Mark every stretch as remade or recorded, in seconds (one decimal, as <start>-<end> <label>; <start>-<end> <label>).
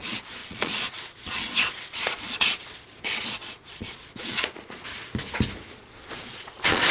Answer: 0.0-4.9 remade; 4.9-5.7 recorded; 5.7-6.9 remade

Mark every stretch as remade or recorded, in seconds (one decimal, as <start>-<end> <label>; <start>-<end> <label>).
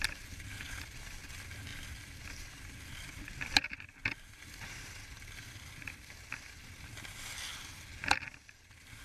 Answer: 0.0-9.0 recorded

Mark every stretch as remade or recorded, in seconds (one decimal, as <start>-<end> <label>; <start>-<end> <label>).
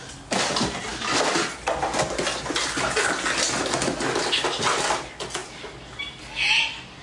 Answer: 0.0-7.0 recorded